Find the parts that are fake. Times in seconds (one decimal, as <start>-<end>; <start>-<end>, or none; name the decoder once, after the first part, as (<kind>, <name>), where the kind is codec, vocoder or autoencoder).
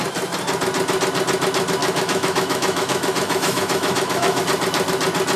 1.8-4.4 (autoencoder, DAC-VAE)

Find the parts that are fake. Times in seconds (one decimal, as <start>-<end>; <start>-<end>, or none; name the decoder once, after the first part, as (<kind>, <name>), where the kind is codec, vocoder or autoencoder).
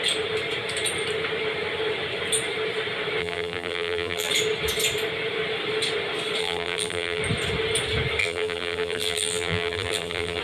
3.2-4.3 (vocoder, BigVGAN v2); 6.4-7.2; 8.2-10.4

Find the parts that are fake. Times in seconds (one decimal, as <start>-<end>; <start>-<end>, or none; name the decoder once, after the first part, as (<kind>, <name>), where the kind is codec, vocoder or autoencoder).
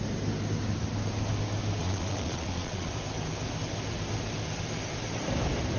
1.8-2.9 (vocoder, Vocos)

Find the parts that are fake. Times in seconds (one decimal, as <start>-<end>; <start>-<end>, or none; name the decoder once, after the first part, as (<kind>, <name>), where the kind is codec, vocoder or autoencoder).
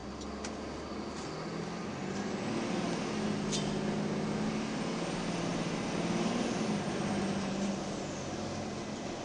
none